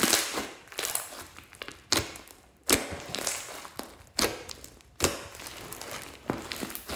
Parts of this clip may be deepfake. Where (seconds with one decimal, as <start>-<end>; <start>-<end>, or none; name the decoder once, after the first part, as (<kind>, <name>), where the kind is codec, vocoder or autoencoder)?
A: none